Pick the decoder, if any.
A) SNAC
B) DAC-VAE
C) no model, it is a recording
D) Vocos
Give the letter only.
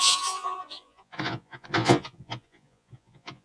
D